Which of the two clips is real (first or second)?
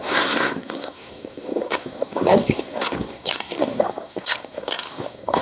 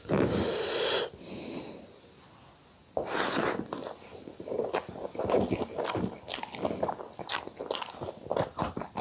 second